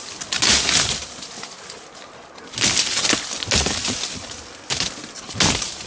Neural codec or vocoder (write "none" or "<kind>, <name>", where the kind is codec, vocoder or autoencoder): none